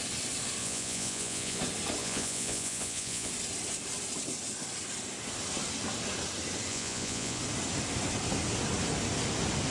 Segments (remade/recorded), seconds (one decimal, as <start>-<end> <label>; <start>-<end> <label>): 0.0-0.6 recorded; 0.6-1.6 remade; 1.6-2.0 recorded; 2.0-3.3 remade; 3.3-6.7 recorded; 6.7-7.4 remade; 7.4-9.7 recorded